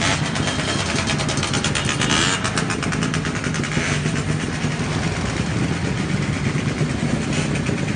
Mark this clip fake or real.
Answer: real